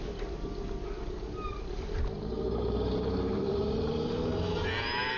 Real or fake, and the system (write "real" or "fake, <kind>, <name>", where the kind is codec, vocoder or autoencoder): fake, vocoder, BigVGAN v2